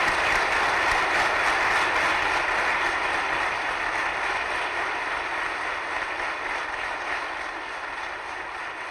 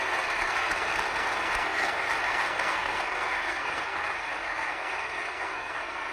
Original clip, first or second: first